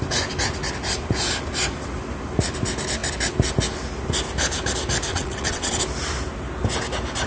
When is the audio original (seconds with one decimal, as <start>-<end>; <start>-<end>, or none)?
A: 0.0-5.1; 5.8-7.3